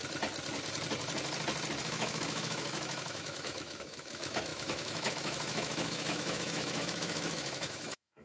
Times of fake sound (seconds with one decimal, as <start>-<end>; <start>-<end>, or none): 1.8-8.2